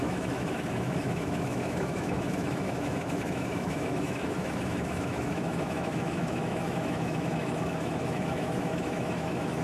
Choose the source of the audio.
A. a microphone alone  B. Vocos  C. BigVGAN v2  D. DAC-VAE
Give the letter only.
D